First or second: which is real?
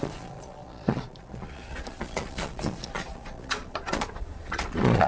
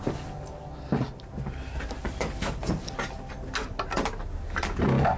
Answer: second